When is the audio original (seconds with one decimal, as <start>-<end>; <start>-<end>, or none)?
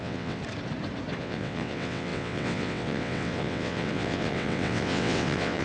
0.4-1.2